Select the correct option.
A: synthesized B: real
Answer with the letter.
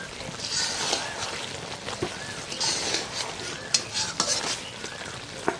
B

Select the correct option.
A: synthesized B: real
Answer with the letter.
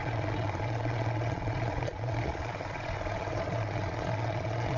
A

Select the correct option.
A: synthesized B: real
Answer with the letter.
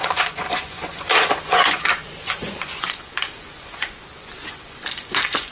A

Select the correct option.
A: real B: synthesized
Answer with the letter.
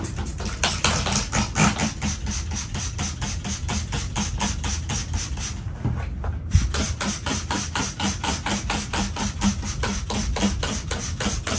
A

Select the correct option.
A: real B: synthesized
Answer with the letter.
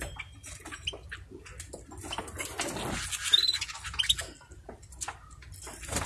A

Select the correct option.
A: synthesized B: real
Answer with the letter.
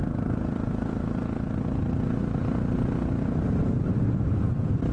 B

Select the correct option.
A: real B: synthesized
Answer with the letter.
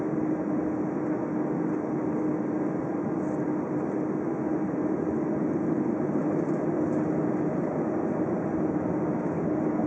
A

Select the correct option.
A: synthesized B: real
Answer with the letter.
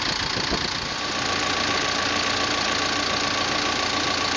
B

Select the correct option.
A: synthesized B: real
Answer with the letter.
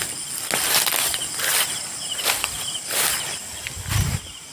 B